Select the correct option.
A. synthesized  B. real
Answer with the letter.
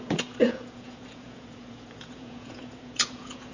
A